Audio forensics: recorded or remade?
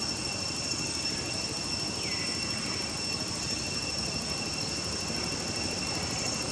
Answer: recorded